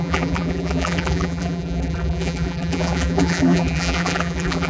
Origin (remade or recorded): remade